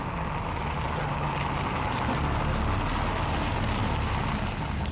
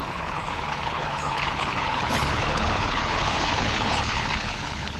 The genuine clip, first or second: first